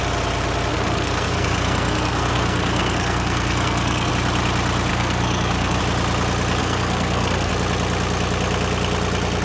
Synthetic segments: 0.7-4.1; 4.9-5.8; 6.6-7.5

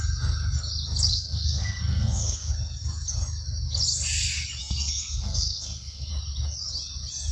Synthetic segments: 1.1-2.5; 4.6-6.1

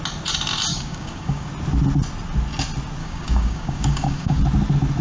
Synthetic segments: 0.7-1.5; 3.0-4.4

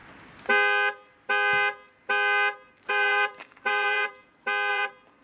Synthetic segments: 2.9-4.2; 4.7-5.2

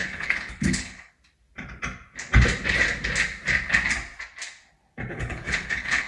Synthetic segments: 0.0-1.1; 5.1-6.1

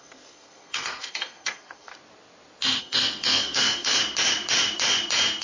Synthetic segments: 0.0-1.9; 2.8-4.0